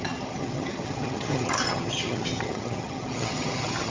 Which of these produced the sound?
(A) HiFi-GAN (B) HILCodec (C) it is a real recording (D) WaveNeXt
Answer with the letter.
A